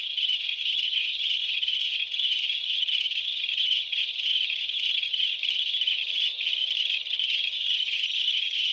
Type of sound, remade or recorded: remade